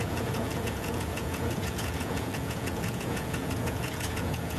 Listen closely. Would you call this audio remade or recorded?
remade